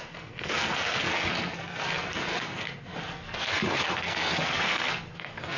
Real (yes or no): no